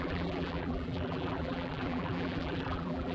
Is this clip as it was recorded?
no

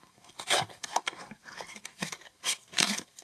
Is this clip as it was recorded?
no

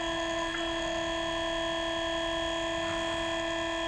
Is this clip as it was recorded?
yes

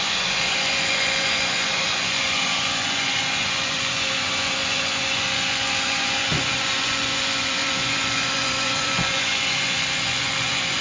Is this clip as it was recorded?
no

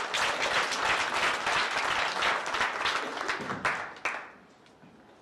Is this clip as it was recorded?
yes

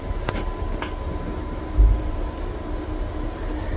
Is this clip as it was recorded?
yes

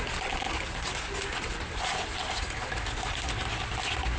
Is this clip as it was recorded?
yes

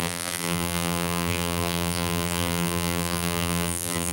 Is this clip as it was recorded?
no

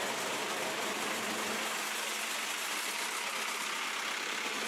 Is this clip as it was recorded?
no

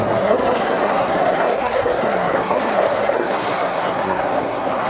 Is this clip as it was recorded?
no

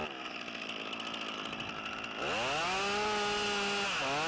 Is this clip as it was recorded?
yes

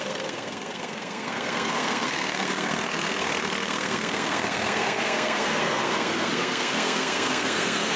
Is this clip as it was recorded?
no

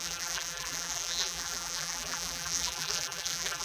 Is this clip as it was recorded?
no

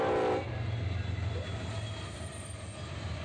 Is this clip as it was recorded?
yes